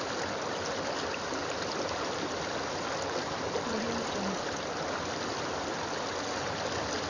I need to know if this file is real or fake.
real